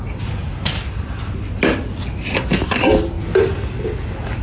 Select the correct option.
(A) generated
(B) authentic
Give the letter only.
B